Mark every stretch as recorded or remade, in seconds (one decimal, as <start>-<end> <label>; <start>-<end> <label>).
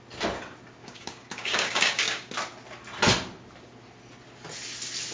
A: 0.0-0.8 recorded; 0.8-2.3 remade; 2.3-5.1 recorded